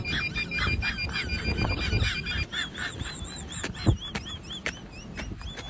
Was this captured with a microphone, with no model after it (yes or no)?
yes